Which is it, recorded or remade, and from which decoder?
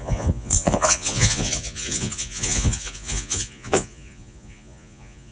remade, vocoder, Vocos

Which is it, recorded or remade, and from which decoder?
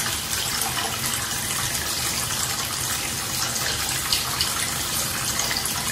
recorded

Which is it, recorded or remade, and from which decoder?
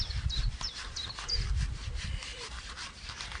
recorded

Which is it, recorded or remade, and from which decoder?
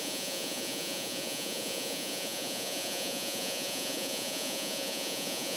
remade, vocoder, Vocos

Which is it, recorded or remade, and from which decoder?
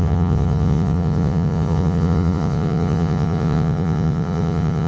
remade, vocoder, Vocos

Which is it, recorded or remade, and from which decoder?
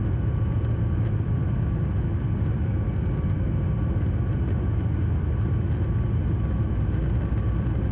recorded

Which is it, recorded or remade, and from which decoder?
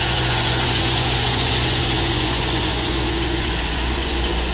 remade, vocoder, Vocos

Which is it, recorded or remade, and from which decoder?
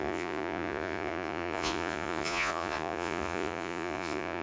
remade, vocoder, Vocos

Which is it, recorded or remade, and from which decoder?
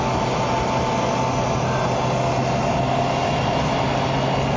recorded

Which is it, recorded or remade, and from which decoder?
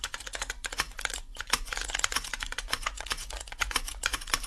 remade, vocoder, Vocos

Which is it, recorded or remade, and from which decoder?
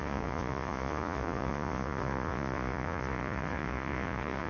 remade, vocoder, Vocos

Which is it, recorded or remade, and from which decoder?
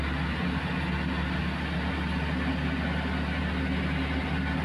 recorded